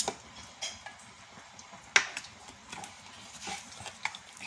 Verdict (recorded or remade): recorded